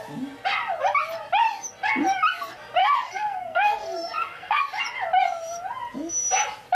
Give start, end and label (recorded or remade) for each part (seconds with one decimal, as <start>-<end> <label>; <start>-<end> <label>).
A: 0.0-2.8 recorded; 2.8-4.6 remade; 4.6-6.7 recorded